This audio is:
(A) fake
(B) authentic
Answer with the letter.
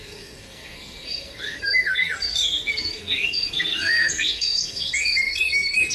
A